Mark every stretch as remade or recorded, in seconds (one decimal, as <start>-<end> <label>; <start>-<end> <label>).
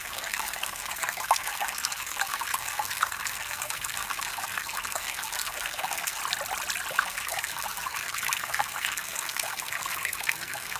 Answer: 0.0-6.2 remade; 6.2-6.9 recorded; 6.9-10.8 remade